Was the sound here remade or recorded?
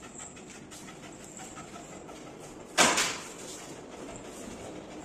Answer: recorded